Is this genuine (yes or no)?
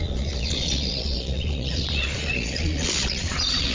no